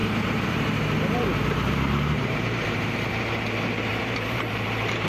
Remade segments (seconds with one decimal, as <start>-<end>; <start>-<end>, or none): 0.0-3.1; 3.9-5.1